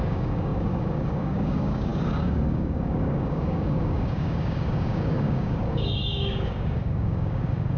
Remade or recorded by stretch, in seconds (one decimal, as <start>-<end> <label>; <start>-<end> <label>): 0.0-7.8 remade